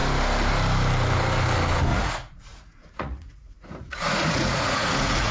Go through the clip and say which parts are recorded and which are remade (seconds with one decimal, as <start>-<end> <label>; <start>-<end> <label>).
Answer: 0.0-1.9 recorded; 1.9-5.3 remade